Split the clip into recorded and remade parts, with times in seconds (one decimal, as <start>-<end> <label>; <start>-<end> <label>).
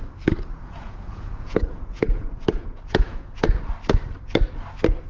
0.0-0.5 recorded; 0.5-3.6 remade; 3.6-5.1 recorded